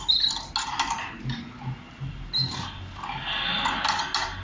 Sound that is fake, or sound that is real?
real